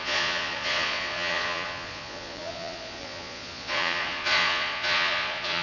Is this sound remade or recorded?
remade